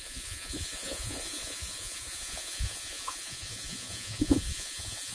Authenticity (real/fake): fake